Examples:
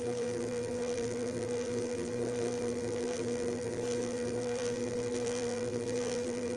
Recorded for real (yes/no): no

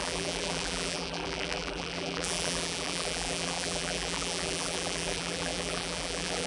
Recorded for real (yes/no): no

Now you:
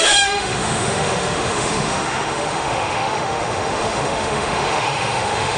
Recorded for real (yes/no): no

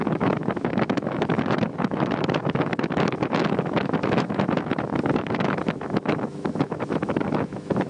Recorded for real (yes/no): no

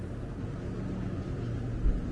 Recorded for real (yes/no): yes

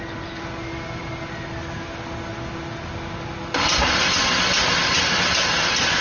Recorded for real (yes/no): yes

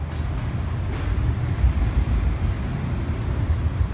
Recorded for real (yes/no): yes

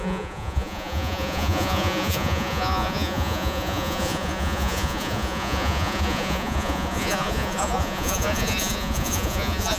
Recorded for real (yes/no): no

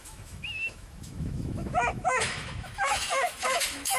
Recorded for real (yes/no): no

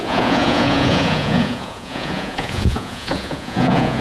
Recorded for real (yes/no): no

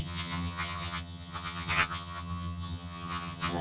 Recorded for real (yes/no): no